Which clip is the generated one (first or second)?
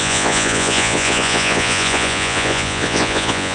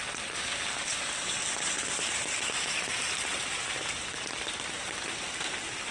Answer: first